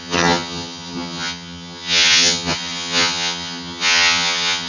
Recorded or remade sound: remade